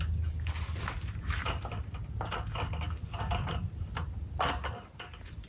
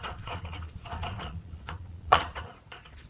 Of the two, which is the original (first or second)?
first